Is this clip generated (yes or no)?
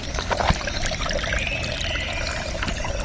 no